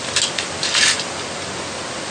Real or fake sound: real